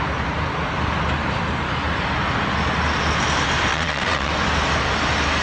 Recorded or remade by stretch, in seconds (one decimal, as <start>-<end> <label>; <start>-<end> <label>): 0.0-3.7 recorded; 3.7-4.3 remade; 4.3-5.4 recorded